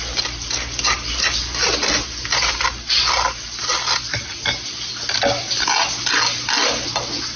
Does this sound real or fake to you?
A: real